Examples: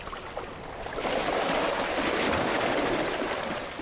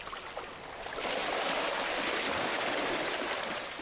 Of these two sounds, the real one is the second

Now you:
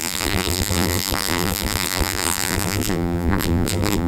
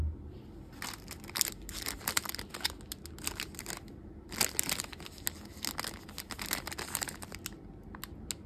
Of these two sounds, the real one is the second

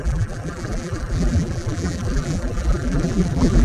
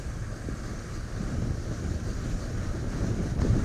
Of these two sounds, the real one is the second